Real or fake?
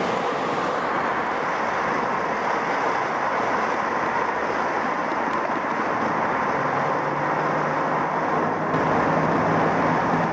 real